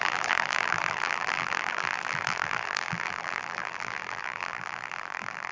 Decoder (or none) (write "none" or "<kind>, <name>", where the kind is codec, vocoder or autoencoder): vocoder, BigVGAN v2